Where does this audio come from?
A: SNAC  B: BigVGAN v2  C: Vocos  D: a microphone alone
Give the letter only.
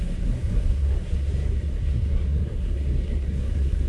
A